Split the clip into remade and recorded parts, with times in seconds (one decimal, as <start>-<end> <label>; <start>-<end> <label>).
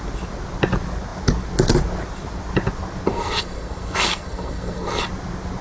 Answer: 0.0-3.1 recorded; 3.1-5.0 remade; 5.0-5.6 recorded